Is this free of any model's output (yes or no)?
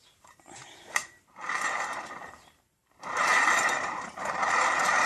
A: no